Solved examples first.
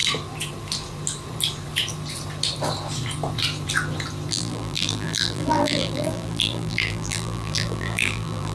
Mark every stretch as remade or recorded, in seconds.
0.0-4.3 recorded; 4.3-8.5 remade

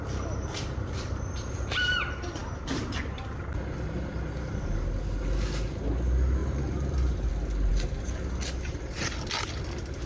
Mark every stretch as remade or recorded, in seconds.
0.0-6.4 recorded; 6.4-7.3 remade; 7.3-10.1 recorded

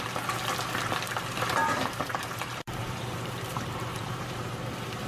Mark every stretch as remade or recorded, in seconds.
0.0-1.6 recorded; 1.6-5.1 remade

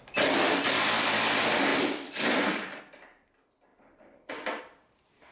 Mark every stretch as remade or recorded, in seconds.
0.0-1.7 recorded; 1.7-2.8 remade; 2.8-3.7 recorded; 3.7-4.6 remade; 4.6-5.3 recorded